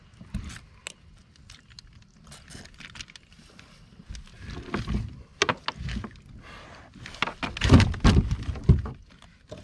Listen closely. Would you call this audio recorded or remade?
recorded